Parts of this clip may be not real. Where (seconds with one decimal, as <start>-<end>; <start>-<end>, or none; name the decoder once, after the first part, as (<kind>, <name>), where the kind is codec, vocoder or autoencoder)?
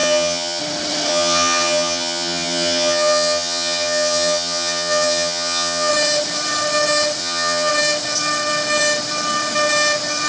0.0-0.6 (vocoder, HiFi-GAN); 1.1-5.9; 7.2-7.7